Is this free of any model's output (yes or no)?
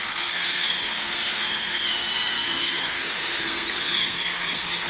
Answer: no